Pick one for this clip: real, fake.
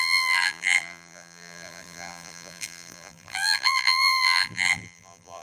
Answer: fake